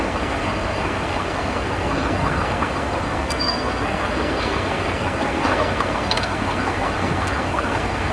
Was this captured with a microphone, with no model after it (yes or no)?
no